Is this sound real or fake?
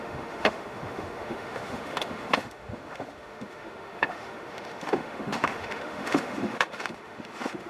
fake